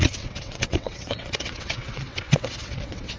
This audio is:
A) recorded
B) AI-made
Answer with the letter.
B